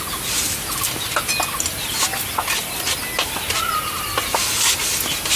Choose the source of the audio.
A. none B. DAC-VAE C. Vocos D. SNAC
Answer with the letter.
A